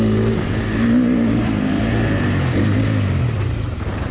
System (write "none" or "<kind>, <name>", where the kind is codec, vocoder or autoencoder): none